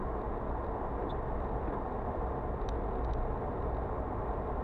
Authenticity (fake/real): real